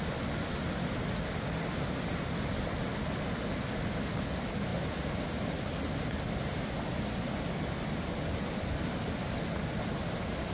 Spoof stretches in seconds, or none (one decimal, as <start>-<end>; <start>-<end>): none